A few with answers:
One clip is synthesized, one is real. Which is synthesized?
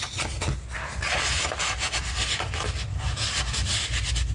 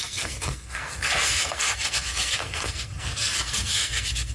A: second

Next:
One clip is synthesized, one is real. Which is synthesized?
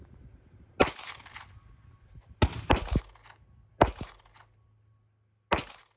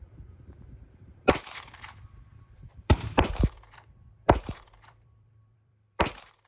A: second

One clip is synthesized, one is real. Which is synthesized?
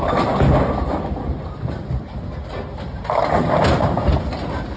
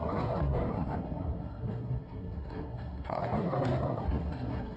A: second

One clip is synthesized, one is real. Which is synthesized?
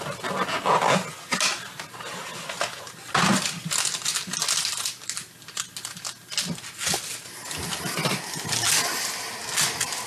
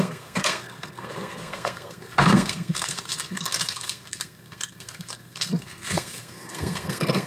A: second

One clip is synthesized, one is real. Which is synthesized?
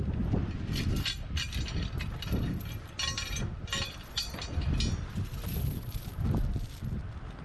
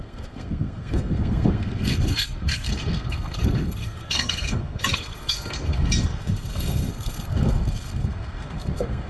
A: second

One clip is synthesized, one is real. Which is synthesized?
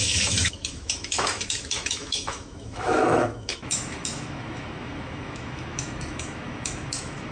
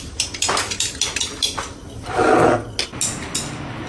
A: first